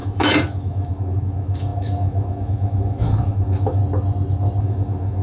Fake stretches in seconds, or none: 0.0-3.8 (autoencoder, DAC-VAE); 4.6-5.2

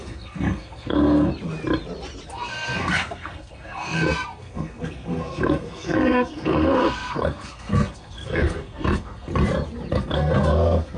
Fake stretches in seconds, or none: 0.0-1.3 (codec, SNAC); 2.4-9.3; 9.9-11.0

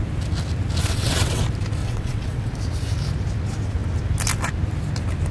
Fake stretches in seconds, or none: 0.8-1.4 (vocoder, WaveNeXt); 1.8-2.5

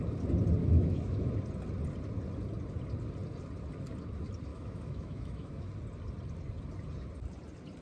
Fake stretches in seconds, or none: 0.6-1.3 (autoencoder, DAC-VAE); 4.5-5.7

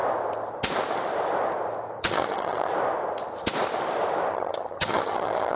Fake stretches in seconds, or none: 2.0-2.7 (vocoder, HiFi-GAN); 4.3-5.6